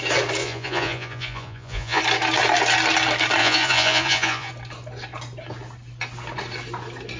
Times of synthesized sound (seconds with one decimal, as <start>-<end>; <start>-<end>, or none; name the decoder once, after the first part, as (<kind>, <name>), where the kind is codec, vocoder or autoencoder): 0.4-2.0 (vocoder, Vocos); 3.4-4.5